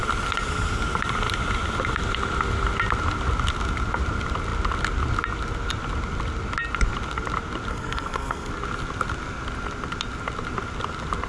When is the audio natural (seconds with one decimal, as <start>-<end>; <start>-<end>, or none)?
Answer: 0.0-7.7; 8.5-11.3